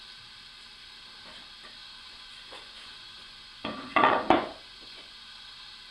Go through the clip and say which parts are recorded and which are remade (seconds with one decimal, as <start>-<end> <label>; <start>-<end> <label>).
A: 0.0-1.8 recorded; 1.8-5.3 remade; 5.3-5.9 recorded